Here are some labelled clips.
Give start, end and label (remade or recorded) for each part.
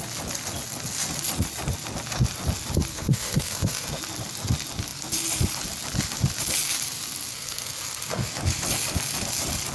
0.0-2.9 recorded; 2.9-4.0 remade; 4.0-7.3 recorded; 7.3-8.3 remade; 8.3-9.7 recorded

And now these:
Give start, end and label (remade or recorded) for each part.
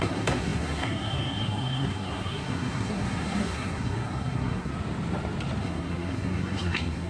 0.0-4.7 remade; 4.7-5.6 recorded; 5.6-7.1 remade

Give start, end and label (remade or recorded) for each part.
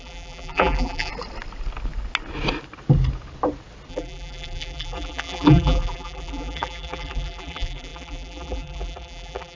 0.0-1.1 remade; 1.1-3.9 recorded; 3.9-9.6 remade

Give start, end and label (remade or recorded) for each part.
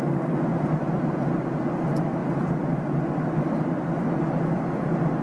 0.0-0.5 recorded; 0.5-1.6 remade; 1.6-5.2 recorded